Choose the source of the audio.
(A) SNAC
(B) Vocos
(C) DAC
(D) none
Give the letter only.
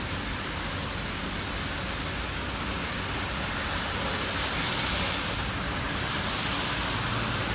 D